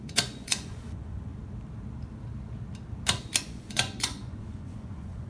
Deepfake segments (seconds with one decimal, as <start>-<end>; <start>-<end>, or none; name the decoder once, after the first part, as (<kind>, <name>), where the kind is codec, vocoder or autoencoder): 0.0-1.3 (vocoder, Vocos); 3.4-5.3